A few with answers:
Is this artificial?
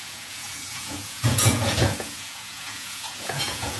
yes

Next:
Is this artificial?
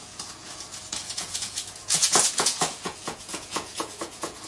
yes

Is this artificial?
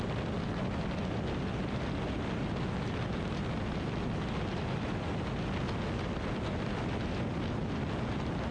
no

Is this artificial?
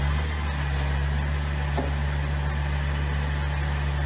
no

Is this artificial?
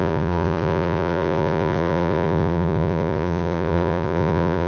yes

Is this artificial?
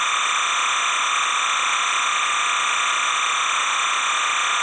yes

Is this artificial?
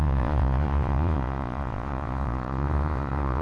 yes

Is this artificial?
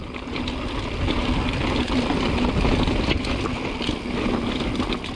no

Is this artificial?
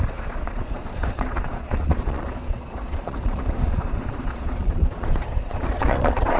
yes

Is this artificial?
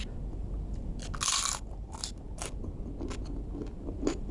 no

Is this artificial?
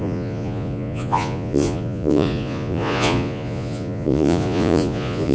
yes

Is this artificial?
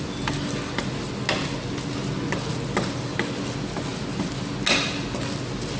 no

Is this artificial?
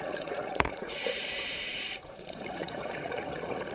yes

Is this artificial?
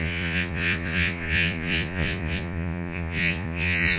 yes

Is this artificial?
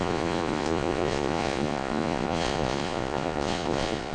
yes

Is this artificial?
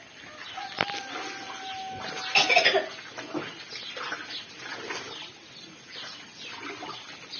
no